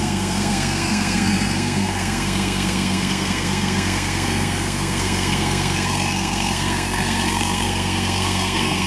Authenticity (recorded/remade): remade